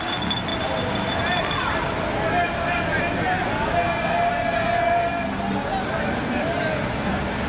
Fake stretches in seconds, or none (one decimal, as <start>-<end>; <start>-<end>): none